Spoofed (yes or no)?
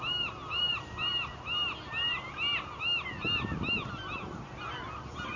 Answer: no